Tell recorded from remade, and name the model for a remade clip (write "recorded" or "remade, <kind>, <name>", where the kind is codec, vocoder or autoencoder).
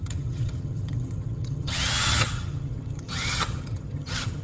remade, vocoder, HiFi-GAN